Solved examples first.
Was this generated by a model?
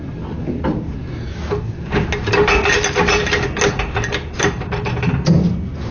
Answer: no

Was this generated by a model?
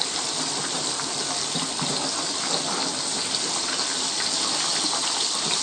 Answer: no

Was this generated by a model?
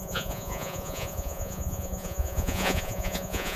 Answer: yes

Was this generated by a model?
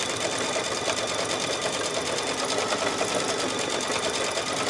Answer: no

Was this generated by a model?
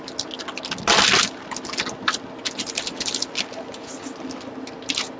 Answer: no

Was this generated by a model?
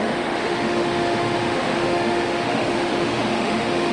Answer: yes